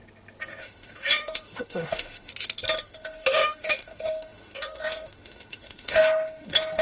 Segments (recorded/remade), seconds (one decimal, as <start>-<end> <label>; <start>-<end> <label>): 0.0-0.6 recorded; 0.6-2.3 remade; 2.3-2.8 recorded; 2.8-6.8 remade